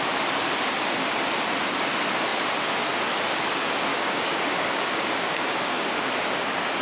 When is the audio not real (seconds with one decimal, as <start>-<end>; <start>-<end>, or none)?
3.9-6.1